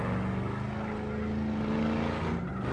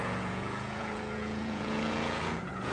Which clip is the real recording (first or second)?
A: first